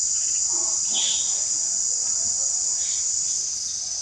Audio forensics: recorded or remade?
recorded